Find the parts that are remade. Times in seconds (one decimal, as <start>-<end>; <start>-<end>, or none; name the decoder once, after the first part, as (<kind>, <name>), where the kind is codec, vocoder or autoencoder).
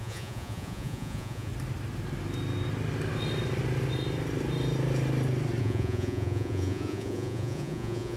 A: 0.0-1.5 (vocoder, Vocos); 5.6-8.2